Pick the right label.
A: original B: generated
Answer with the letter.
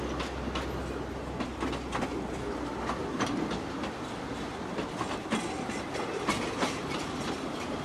A